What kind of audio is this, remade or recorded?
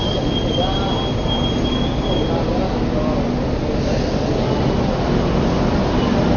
recorded